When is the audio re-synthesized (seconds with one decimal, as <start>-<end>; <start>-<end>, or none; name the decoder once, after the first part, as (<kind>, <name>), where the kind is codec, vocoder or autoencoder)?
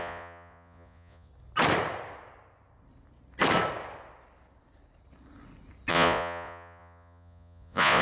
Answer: 0.0-1.3 (vocoder, Vocos); 5.9-8.0